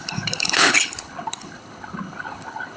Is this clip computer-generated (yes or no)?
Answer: yes